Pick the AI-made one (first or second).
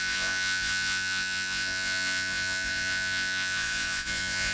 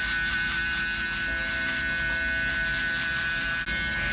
first